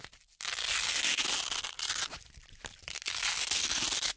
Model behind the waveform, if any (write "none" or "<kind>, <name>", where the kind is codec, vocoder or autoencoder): none